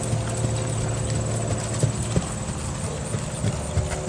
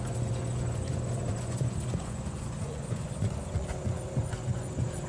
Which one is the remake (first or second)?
second